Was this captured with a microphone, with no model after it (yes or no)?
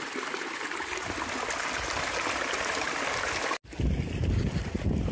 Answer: yes